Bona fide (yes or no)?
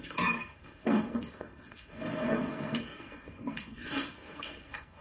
no